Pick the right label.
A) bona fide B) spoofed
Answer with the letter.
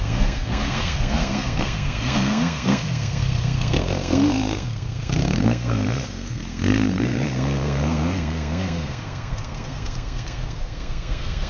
B